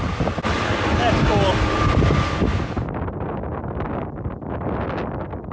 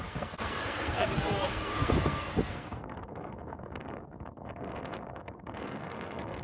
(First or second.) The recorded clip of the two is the first